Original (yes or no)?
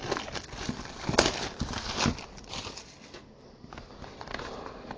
yes